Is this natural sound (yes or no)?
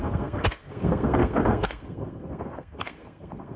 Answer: no